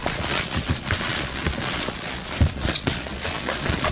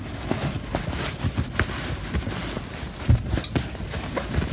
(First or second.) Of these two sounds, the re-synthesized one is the first